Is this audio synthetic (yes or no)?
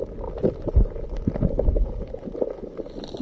no